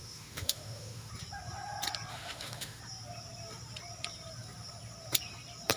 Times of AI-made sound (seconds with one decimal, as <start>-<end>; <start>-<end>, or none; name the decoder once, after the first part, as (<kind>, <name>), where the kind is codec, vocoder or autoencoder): 0.0-1.1 (autoencoder, DAC-VAE); 2.1-2.8